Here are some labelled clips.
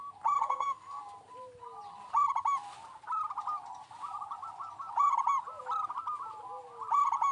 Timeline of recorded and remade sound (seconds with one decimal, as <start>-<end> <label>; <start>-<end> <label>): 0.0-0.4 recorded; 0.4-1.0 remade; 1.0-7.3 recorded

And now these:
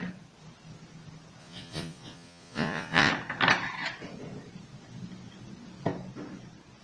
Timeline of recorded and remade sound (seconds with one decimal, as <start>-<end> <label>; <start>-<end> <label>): 0.0-1.4 recorded; 1.4-3.1 remade; 3.1-6.8 recorded

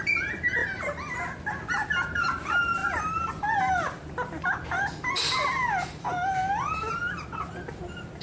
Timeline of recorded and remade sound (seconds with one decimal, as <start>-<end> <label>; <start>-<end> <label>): 0.0-0.6 recorded; 0.6-1.4 remade; 1.4-2.8 recorded; 2.8-3.3 remade; 3.3-8.2 recorded

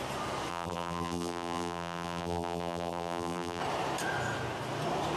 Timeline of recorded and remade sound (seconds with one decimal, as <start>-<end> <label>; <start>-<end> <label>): 0.0-0.5 recorded; 0.5-3.6 remade; 3.6-5.2 recorded

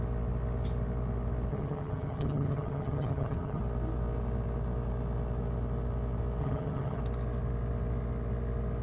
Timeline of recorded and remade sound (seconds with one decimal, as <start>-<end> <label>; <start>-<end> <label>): 0.0-1.5 recorded; 1.5-3.6 remade; 3.6-6.4 recorded; 6.4-7.0 remade; 7.0-8.8 recorded

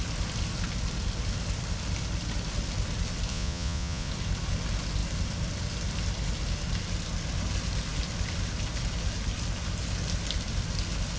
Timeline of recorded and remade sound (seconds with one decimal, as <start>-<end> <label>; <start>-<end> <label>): 0.0-3.3 recorded; 3.3-4.1 remade; 4.1-11.2 recorded